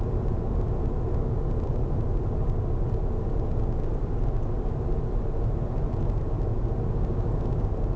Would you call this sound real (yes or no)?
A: yes